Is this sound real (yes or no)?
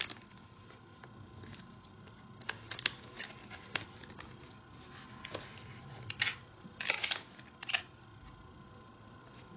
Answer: yes